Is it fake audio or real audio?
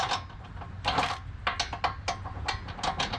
real